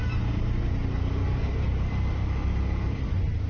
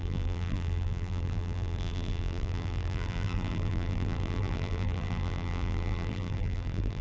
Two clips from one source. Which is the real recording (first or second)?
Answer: first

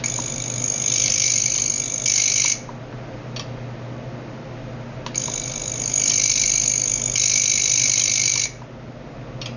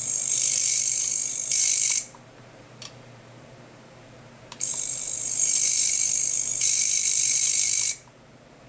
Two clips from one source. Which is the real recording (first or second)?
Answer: first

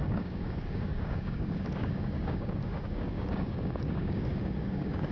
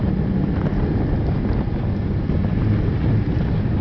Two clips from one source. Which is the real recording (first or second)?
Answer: second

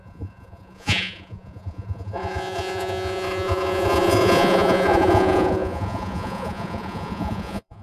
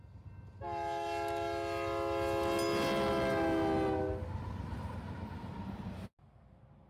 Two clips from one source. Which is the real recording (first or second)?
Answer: second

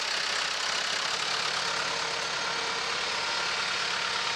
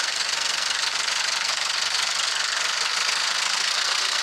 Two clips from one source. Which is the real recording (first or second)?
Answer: first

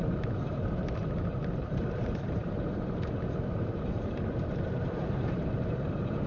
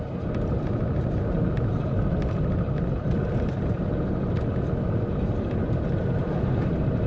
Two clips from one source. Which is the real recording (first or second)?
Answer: second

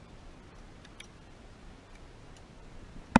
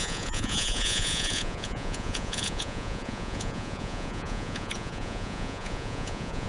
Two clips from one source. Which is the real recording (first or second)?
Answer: first